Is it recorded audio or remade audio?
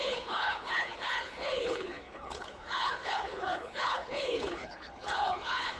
remade